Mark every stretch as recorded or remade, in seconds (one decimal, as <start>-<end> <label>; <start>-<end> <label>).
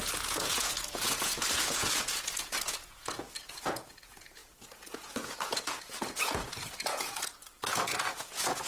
0.0-8.7 remade